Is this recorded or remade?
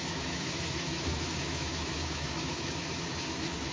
remade